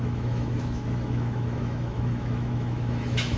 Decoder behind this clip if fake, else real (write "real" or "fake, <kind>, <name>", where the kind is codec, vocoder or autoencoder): fake, autoencoder, DAC-VAE